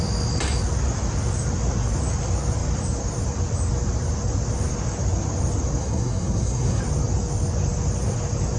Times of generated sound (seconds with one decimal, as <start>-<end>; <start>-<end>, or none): 5.8-6.8